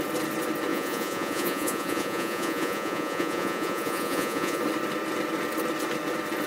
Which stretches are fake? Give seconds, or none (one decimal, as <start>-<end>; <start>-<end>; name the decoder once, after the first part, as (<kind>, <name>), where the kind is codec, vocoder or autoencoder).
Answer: 0.7-4.6 (vocoder, Vocos)